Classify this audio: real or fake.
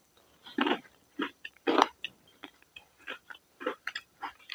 fake